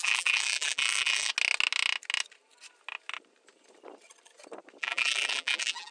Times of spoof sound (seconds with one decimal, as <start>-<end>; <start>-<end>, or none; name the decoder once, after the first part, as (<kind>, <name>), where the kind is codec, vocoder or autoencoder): 0.0-1.3 (vocoder, BigVGAN v2); 4.8-5.9